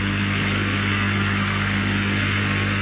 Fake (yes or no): yes